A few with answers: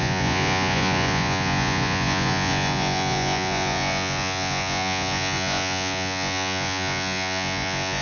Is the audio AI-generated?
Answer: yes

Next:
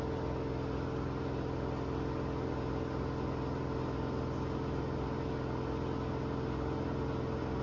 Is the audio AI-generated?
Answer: no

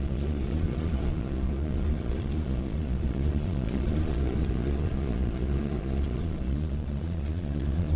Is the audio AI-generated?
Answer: yes